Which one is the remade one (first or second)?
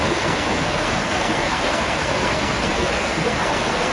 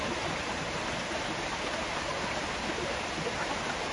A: first